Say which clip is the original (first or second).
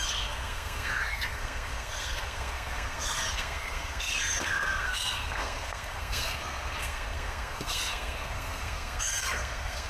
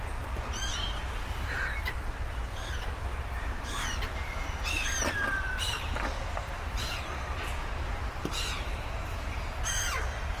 second